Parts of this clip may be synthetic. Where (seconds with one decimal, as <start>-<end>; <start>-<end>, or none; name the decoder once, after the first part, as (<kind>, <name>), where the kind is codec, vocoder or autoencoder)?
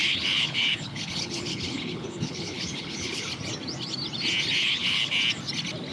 0.0-3.3 (codec, HILCodec); 4.6-5.1